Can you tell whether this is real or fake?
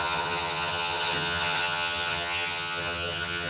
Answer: fake